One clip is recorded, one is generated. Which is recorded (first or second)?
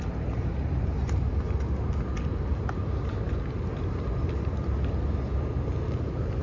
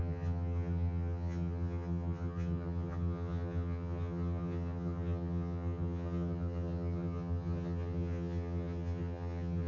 first